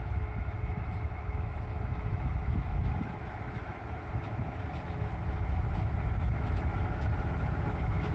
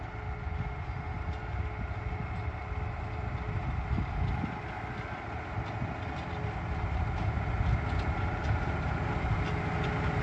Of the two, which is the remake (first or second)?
first